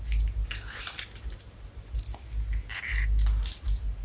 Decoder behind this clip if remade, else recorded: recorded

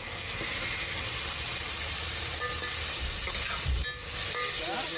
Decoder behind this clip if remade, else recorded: recorded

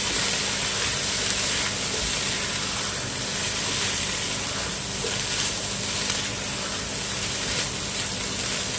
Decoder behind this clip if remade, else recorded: recorded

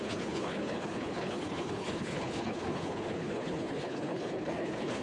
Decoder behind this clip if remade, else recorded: remade, codec, HILCodec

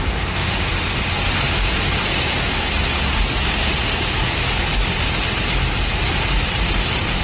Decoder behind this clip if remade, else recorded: recorded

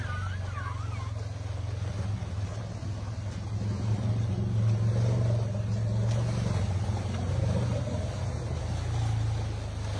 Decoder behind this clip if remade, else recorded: recorded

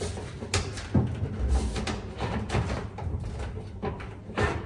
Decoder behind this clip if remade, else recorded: recorded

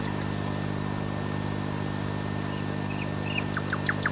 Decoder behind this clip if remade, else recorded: recorded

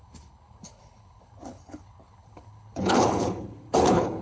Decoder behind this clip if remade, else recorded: remade, codec, HILCodec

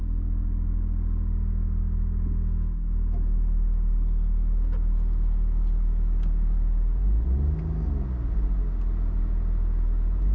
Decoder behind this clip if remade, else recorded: recorded